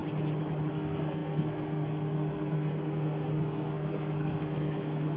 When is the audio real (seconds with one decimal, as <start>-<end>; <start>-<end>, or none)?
0.0-0.7